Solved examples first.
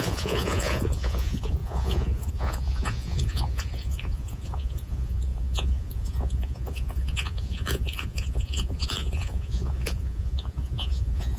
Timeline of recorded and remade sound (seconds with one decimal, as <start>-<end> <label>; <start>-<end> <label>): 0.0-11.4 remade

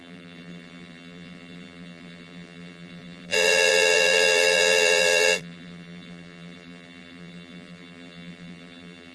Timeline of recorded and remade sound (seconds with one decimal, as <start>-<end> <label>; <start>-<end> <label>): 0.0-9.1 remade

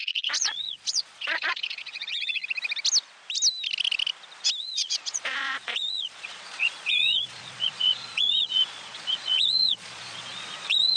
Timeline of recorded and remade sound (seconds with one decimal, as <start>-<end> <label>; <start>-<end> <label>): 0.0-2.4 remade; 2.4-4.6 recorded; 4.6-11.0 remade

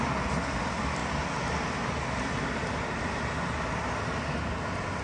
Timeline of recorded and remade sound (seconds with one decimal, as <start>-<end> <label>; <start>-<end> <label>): 0.0-5.0 recorded

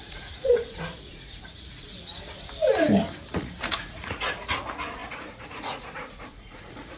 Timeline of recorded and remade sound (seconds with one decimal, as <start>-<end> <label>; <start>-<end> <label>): 0.0-2.1 remade; 2.1-3.3 recorded; 3.3-7.0 remade

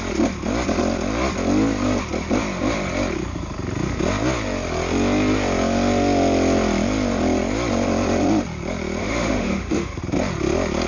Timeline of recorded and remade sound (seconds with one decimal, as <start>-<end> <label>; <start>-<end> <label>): 0.0-9.0 recorded; 9.0-10.0 remade; 10.0-10.9 recorded

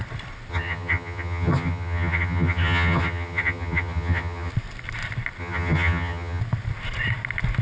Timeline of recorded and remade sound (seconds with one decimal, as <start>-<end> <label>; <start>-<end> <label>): 0.0-0.5 recorded; 0.5-4.5 remade; 4.5-5.4 recorded; 5.4-6.4 remade; 6.4-7.6 recorded

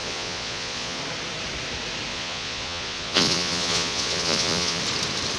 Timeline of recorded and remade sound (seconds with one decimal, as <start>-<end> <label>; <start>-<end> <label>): 0.0-1.0 remade; 1.0-2.1 recorded; 2.1-4.8 remade; 4.8-5.4 recorded